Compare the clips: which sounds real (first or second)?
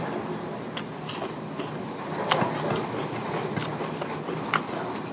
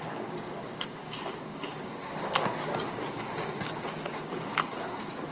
first